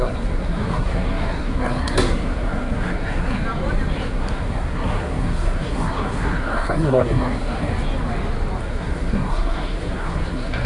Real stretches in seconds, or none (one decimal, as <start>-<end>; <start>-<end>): 3.4-4.0; 7.7-8.6